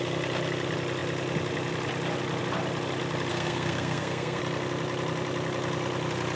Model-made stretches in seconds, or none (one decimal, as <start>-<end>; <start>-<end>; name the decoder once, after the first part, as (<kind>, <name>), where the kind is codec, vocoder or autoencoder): 3.3-4.4 (codec, SNAC)

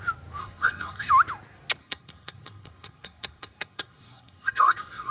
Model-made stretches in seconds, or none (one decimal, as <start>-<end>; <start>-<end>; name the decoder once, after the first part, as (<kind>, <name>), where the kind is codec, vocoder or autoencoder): 0.4-1.1 (codec, SNAC); 1.8-5.1